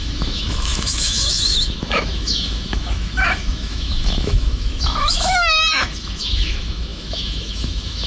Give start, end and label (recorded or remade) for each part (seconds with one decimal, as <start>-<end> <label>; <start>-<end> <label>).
0.0-8.1 remade